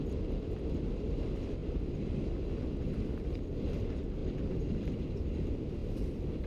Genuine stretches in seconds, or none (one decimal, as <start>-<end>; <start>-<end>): 0.0-6.5